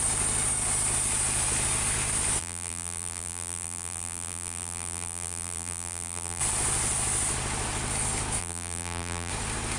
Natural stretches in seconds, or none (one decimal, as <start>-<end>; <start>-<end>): 0.0-2.4; 6.4-8.4; 9.3-9.8